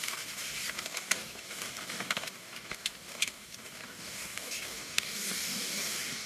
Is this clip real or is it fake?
fake